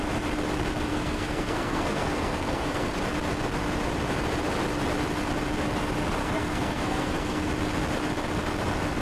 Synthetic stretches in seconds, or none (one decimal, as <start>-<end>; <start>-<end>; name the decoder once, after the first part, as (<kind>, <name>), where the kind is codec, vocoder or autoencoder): 0.9-2.9 (codec, SNAC); 6.2-7.5